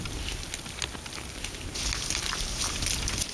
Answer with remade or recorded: recorded